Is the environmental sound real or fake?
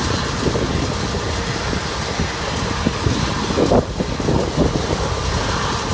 real